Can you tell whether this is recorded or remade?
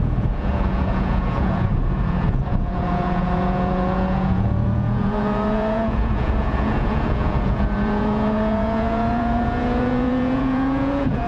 remade